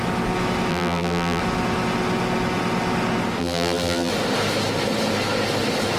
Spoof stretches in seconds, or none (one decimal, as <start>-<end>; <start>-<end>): 0.7-1.4; 3.4-4.1